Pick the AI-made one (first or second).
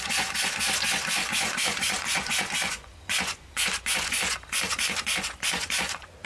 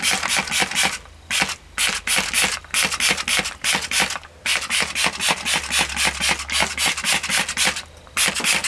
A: first